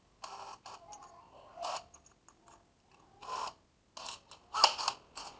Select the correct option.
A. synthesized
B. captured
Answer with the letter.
B